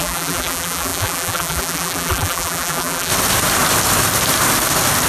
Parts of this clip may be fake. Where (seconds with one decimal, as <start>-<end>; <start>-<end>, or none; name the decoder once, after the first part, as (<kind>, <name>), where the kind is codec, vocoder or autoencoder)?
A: 0.0-3.1 (vocoder, BigVGAN v2)